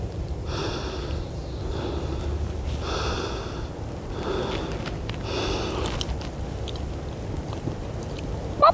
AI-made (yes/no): no